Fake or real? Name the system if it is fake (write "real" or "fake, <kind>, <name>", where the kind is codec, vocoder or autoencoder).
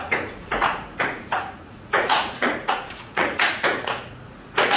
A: fake, vocoder, Vocos